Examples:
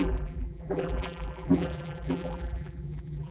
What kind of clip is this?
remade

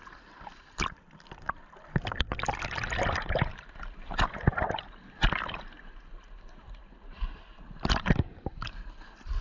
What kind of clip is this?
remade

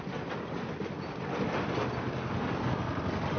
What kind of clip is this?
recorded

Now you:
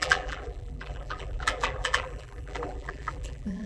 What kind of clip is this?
remade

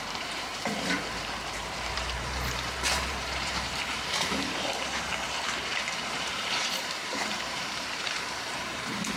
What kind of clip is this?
remade